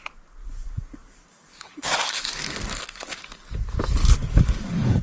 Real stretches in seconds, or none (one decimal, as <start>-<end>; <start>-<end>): 0.0-0.4; 3.4-4.0